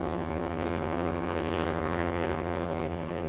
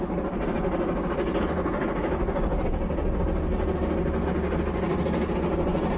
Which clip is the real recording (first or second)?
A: second